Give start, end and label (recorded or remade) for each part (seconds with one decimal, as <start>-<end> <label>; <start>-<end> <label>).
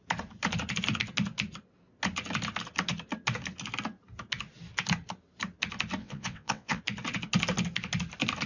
0.0-6.0 recorded; 6.0-6.8 remade; 6.8-8.5 recorded